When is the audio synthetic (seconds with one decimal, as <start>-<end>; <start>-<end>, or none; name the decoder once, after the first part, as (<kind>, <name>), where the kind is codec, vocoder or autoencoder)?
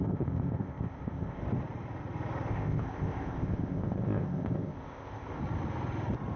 0.0-1.4 (codec, ZipCodec); 2.5-5.4